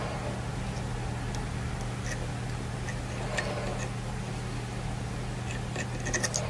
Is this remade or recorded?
recorded